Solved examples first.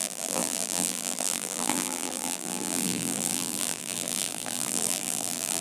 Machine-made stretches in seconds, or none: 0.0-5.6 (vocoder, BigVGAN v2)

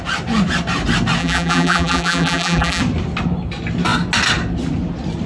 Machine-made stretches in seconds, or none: 1.2-2.8 (vocoder, BigVGAN v2)

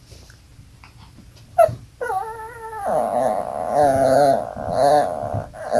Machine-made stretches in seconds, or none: 0.5-1.7 (vocoder, BigVGAN v2)

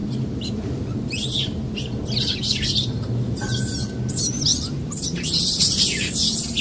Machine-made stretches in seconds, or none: 0.0-4.0 (vocoder, BigVGAN v2); 4.5-5.8